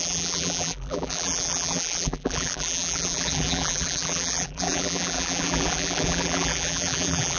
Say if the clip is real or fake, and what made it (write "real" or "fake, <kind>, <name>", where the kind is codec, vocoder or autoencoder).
fake, vocoder, BigVGAN v2